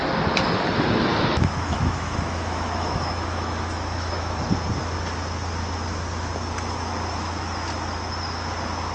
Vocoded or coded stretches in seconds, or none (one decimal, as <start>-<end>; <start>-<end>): 1.1-4.4